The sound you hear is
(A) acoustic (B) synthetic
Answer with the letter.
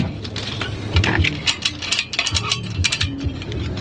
B